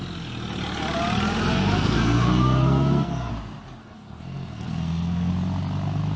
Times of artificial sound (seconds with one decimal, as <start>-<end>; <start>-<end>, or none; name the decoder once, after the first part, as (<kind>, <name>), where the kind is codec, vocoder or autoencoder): 1.5-3.3 (codec, SNAC); 3.8-5.3